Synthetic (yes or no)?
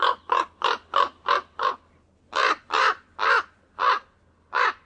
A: no